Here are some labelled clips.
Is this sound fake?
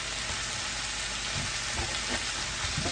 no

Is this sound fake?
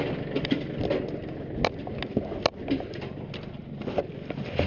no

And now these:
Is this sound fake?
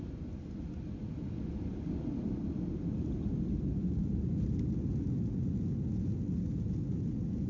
no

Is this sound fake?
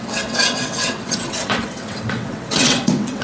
yes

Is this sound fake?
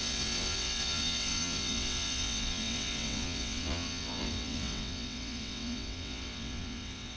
yes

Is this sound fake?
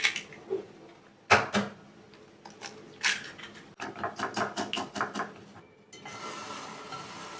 no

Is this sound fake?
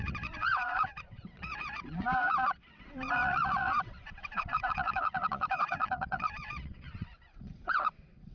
yes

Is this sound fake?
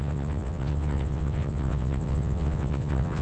yes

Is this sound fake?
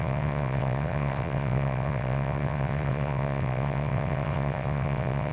yes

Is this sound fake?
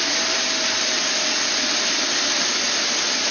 no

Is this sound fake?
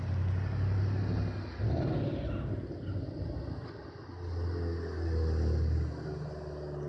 no